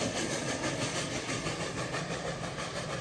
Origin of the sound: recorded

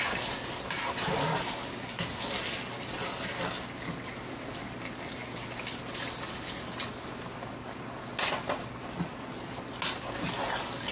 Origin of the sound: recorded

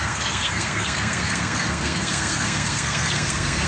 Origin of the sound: remade